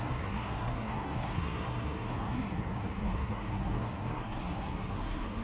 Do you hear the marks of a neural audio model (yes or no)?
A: yes